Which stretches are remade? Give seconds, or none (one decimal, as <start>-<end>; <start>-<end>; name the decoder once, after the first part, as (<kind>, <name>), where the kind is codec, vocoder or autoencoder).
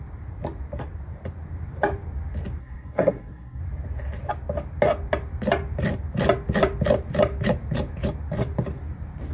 2.6-3.6 (codec, SNAC)